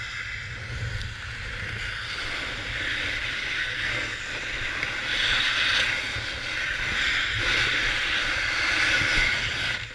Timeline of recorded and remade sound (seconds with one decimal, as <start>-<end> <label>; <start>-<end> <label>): 0.0-3.6 recorded; 3.6-4.2 remade; 4.2-9.9 recorded